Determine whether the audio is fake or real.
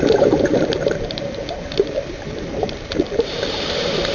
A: fake